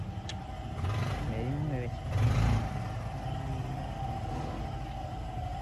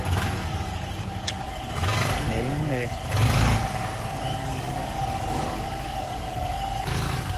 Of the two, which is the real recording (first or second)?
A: first